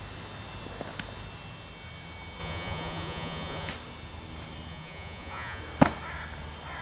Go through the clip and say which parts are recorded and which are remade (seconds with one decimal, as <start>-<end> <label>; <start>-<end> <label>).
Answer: 0.0-2.4 recorded; 2.4-3.7 remade; 3.7-4.7 recorded; 4.7-5.6 remade; 5.6-6.8 recorded